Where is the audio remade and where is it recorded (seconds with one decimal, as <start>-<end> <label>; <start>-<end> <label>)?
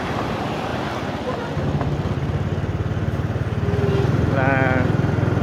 0.0-5.4 recorded